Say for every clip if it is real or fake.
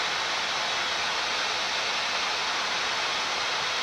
real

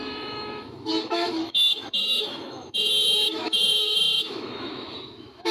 fake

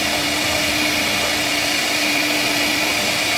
real